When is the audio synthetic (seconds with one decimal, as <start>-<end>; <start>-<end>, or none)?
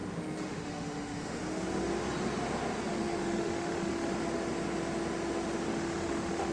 0.0-1.4; 3.0-4.1; 5.7-6.5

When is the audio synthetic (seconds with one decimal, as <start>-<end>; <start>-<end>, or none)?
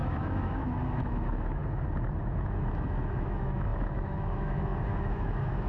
0.0-1.6; 2.2-5.7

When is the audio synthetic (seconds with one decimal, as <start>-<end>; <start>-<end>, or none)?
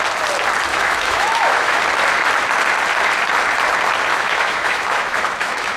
0.7-1.8; 4.1-5.8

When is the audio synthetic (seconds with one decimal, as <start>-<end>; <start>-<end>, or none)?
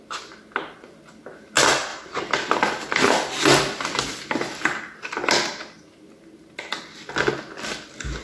none